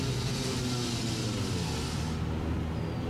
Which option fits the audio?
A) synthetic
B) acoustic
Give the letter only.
B